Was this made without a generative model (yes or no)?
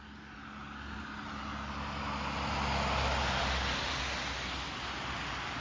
yes